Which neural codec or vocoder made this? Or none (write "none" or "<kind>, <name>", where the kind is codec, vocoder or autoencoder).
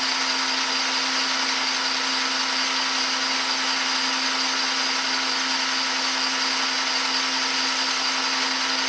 none